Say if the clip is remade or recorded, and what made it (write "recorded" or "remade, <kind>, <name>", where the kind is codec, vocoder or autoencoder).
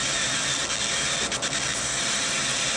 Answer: recorded